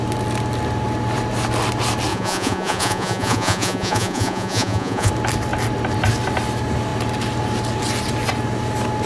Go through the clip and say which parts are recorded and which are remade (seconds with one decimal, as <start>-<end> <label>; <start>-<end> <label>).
0.0-2.1 recorded; 2.1-5.1 remade; 5.1-9.1 recorded